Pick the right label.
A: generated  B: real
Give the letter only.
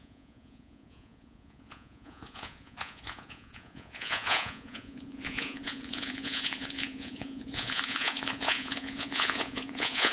A